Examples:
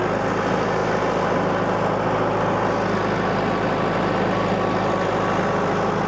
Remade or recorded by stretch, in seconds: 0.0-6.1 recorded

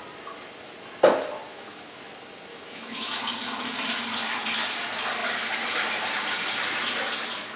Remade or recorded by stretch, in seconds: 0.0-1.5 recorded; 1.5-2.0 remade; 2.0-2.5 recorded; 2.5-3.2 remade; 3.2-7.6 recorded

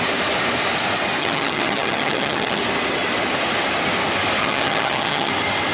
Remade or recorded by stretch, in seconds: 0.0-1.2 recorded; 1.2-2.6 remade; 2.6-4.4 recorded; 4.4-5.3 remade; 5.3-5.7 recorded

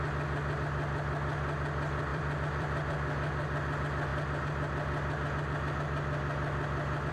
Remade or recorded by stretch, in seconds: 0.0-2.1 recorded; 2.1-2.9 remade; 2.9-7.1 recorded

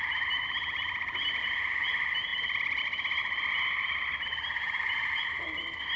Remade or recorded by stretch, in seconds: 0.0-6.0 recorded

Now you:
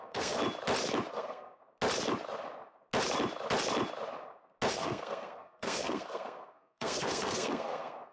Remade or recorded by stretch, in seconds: 0.0-0.4 remade; 0.4-1.1 recorded; 1.1-1.6 remade; 1.6-4.7 recorded; 4.7-8.1 remade

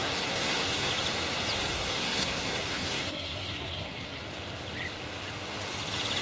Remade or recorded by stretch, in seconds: 0.0-0.9 remade; 0.9-1.7 recorded; 1.7-4.2 remade; 4.2-6.2 recorded

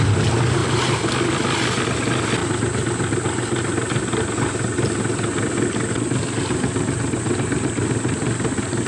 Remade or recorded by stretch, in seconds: 0.0-8.9 recorded